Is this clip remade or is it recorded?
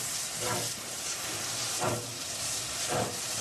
recorded